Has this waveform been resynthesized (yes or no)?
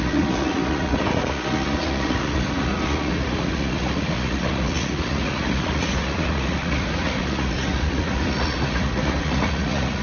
yes